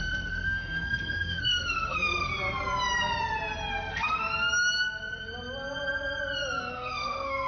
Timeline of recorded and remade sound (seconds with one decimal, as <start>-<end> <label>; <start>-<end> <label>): 0.0-2.3 remade; 2.3-3.7 recorded; 3.7-4.2 remade; 4.2-6.6 recorded; 6.6-7.5 remade